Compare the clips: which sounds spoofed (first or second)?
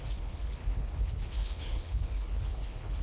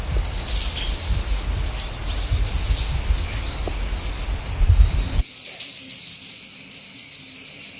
first